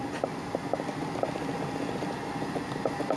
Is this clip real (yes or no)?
yes